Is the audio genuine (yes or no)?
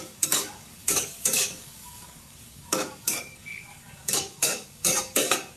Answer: no